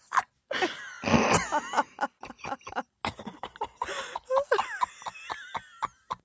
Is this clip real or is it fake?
real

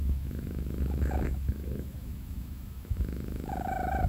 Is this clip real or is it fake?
fake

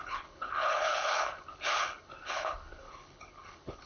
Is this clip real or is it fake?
fake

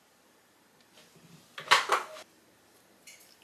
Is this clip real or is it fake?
real